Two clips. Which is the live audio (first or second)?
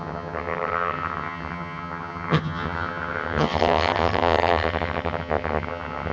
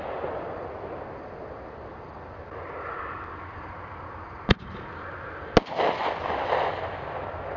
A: second